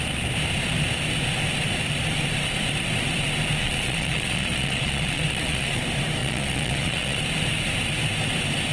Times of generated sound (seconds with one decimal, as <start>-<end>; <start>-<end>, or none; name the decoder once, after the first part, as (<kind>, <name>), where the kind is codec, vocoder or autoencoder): 3.6-5.8 (vocoder, Vocos); 6.2-7.2